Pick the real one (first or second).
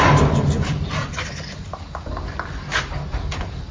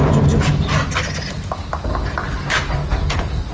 second